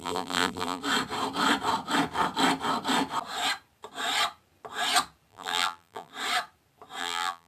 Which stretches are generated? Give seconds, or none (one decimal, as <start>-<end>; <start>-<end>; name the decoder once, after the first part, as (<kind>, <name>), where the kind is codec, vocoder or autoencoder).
0.0-0.8 (vocoder, BigVGAN v2); 5.3-6.1; 7.0-7.5